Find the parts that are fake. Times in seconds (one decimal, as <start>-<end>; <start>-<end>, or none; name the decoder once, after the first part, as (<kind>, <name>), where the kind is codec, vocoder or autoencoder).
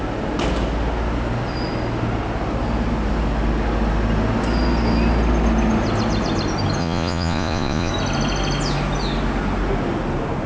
6.8-7.9 (vocoder, Vocos)